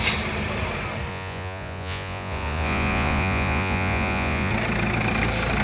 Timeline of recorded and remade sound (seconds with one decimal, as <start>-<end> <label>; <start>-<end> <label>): 0.0-1.1 recorded; 1.1-4.5 remade; 4.5-5.6 recorded